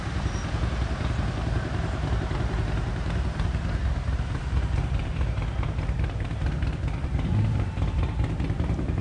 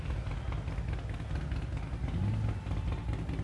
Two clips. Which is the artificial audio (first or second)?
first